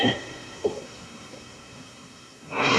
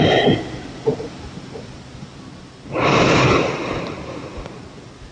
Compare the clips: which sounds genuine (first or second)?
second